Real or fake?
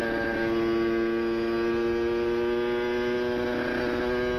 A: real